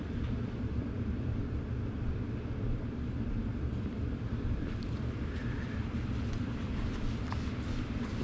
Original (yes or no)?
no